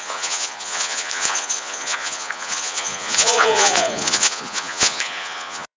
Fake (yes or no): yes